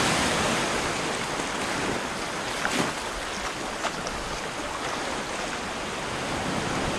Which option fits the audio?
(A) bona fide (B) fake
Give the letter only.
A